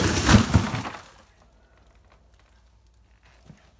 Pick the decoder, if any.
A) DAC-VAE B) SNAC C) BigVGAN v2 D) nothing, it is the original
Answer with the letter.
D